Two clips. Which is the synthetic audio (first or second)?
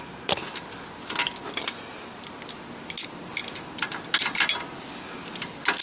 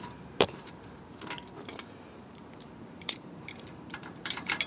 second